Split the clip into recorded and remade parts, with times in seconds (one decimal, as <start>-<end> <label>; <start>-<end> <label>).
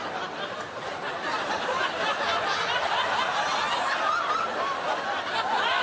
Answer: 0.0-5.8 recorded